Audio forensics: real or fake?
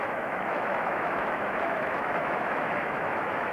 fake